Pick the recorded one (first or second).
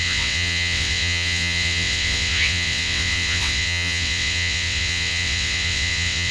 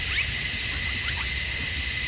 second